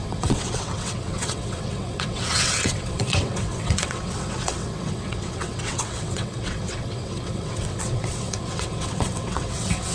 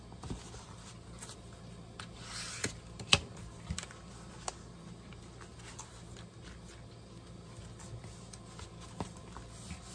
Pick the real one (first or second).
second